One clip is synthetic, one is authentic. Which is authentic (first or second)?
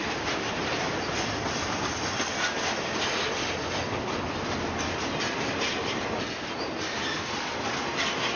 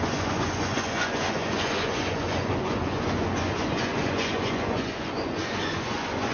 first